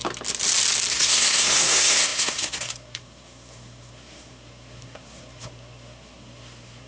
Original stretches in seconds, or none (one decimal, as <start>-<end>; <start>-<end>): 0.0-0.9